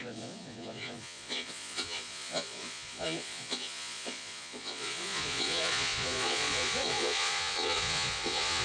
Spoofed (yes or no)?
yes